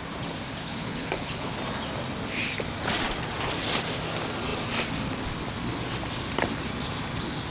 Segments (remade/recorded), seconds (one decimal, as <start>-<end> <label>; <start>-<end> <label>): 0.0-0.6 recorded; 0.6-1.5 remade; 1.5-7.5 recorded